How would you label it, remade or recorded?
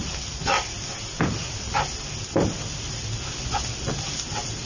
recorded